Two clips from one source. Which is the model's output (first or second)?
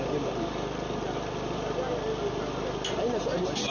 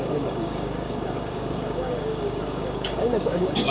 second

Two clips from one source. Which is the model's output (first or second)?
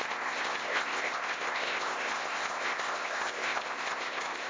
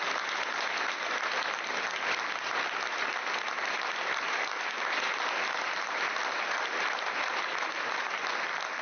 first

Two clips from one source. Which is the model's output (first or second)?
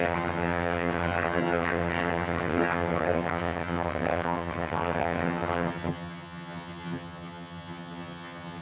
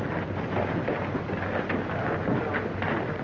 first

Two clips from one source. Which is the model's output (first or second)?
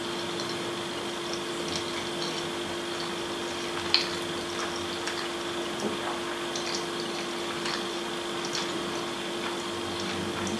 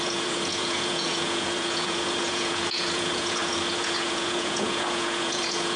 second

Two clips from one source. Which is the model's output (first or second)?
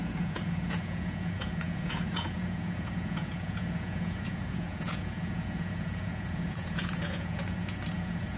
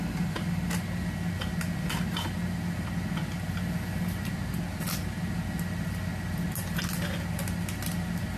first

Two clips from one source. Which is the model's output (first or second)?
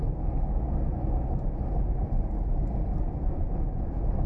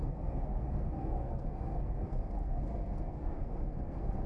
second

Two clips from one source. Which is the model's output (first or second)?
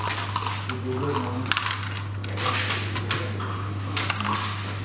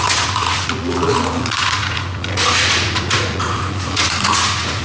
second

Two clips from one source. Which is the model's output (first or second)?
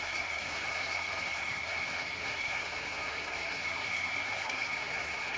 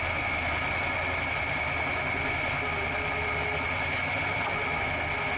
first